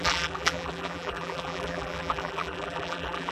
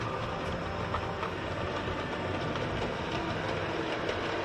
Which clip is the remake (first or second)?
first